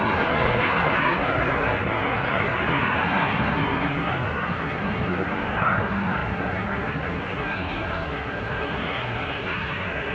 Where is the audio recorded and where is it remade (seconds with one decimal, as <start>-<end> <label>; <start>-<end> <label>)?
0.0-10.1 remade

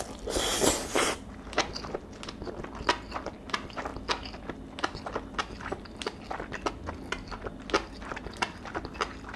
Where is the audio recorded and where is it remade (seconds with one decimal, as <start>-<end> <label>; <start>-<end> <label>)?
0.0-9.4 recorded

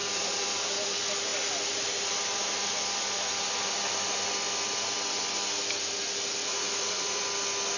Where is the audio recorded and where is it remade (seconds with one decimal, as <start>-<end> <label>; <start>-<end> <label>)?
0.0-6.4 recorded; 6.4-7.2 remade; 7.2-7.8 recorded

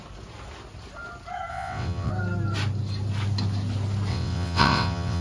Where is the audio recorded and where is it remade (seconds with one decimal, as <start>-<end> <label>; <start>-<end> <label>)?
0.0-1.5 recorded; 1.5-2.1 remade; 2.1-4.1 recorded; 4.1-5.2 remade

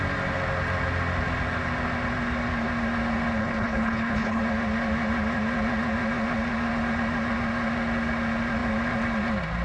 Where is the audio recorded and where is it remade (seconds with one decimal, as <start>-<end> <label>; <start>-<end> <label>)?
0.0-3.4 recorded; 3.4-4.4 remade; 4.4-9.6 recorded